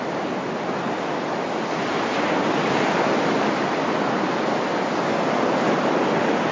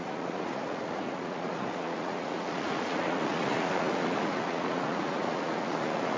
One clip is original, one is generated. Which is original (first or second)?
first